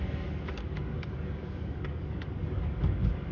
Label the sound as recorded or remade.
remade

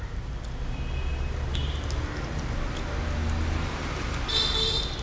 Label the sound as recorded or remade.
recorded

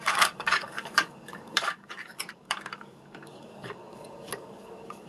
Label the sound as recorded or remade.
remade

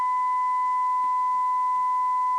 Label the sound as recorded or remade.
recorded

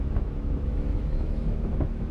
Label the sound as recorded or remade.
remade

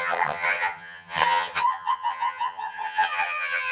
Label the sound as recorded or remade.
remade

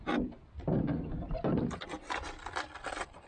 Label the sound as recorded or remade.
recorded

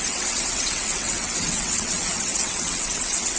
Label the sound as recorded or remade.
remade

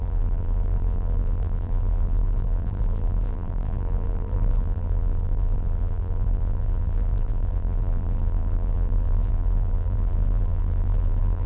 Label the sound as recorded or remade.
remade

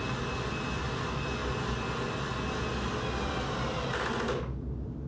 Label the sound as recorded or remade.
recorded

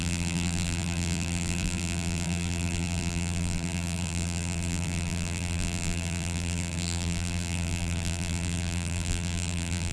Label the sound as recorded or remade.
remade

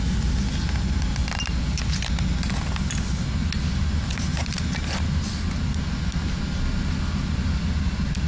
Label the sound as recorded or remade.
recorded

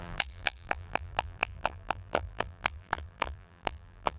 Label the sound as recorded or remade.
remade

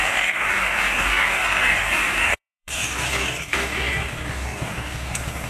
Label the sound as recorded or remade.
remade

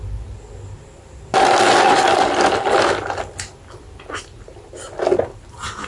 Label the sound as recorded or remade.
recorded